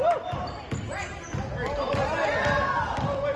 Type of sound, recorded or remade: recorded